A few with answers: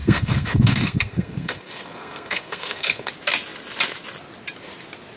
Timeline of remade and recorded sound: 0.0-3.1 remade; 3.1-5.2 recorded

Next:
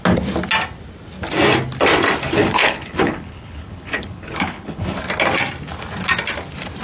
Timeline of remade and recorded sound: 0.0-2.4 recorded; 2.4-5.0 remade; 5.0-6.8 recorded

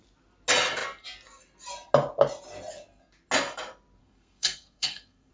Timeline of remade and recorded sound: 0.0-4.0 recorded; 4.0-5.3 remade

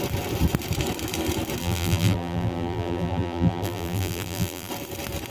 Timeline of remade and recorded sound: 0.0-1.6 recorded; 1.6-4.7 remade; 4.7-5.3 recorded

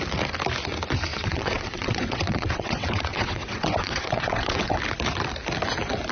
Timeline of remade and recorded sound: 0.0-1.1 recorded; 1.1-4.8 remade; 4.8-6.1 recorded

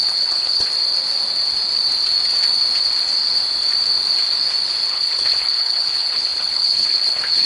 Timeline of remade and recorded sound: 0.0-0.7 remade; 0.7-4.9 recorded; 4.9-7.5 remade